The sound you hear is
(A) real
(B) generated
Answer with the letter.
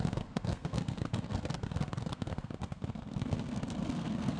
B